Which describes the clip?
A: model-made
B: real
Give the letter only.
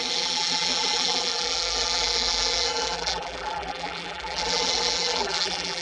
A